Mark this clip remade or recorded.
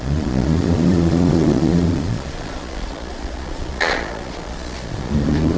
remade